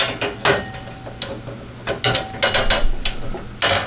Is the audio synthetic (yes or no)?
no